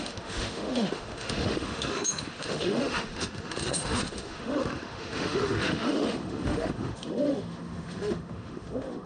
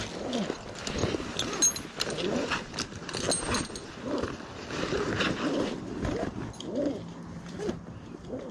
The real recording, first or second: second